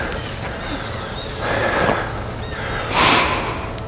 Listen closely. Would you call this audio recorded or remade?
recorded